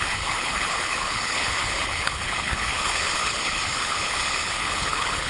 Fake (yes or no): yes